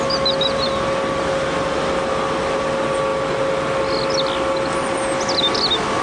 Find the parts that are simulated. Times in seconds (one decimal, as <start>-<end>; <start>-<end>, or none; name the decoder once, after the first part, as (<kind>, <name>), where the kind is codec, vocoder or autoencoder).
none